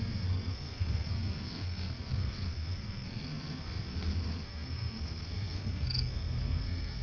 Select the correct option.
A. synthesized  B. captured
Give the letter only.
A